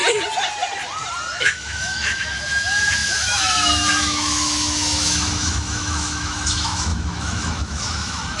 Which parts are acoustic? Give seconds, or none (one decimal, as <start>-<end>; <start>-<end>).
0.0-1.4